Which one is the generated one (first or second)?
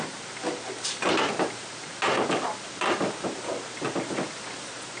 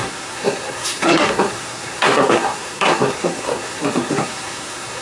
second